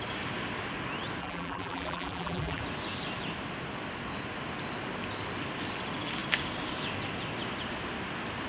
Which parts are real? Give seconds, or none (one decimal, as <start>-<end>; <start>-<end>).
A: 0.0-1.2; 2.6-8.5